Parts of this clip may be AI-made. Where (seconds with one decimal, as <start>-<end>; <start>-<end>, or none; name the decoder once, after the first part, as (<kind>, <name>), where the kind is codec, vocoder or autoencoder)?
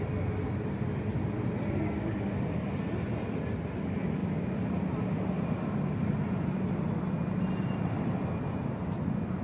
none